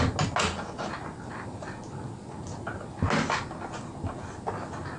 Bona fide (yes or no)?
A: yes